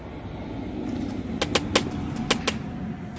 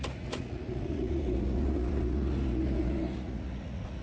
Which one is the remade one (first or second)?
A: second